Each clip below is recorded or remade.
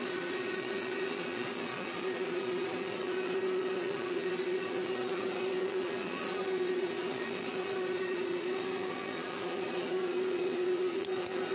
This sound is remade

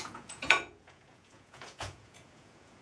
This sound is remade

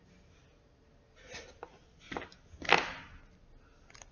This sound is recorded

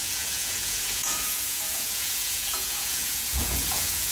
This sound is remade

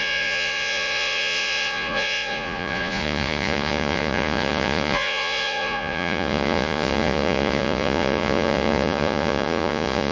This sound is remade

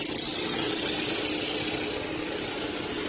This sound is recorded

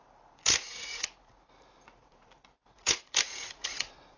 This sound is remade